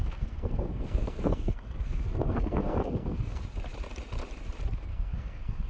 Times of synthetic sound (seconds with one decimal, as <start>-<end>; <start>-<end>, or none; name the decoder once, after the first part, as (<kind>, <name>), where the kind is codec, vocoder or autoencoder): 0.0-3.4 (codec, SNAC); 4.9-5.7